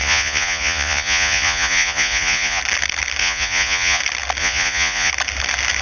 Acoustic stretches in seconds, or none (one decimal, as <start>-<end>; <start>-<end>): 2.6-3.2; 4.0-4.4; 5.1-5.8

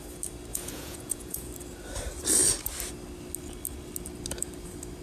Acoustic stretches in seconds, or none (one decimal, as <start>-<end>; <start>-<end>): 0.0-0.5; 1.5-5.0